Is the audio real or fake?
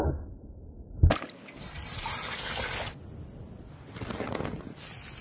real